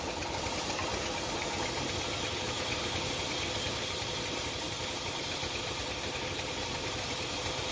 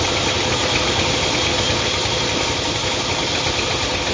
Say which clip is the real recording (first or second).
second